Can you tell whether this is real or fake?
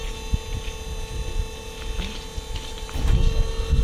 real